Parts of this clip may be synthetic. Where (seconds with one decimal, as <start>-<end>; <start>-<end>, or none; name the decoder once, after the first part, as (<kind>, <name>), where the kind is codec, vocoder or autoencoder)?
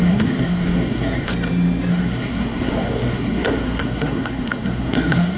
0.0-1.3 (codec, SNAC); 1.9-5.4